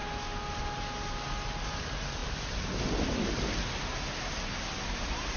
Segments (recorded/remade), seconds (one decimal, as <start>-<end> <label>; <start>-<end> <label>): 0.0-5.4 recorded